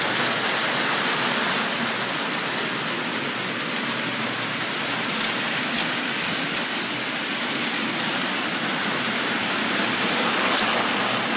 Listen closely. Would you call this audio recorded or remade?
recorded